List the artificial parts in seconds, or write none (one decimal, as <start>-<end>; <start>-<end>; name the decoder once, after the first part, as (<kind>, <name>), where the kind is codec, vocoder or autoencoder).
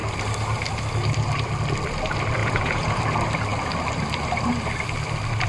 2.4-3.0 (vocoder, Vocos)